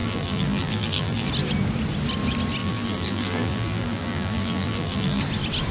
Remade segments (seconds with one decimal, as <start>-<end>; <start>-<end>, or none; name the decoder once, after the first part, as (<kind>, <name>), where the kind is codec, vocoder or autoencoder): 0.0-1.3 (vocoder, BigVGAN v2); 2.6-5.2